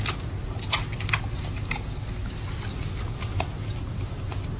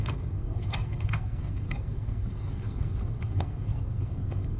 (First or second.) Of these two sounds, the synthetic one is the second